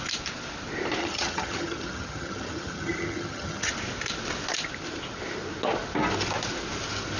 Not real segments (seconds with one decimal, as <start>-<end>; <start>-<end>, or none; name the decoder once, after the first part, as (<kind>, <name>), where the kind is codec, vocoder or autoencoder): 1.0-3.7 (vocoder, HiFi-GAN)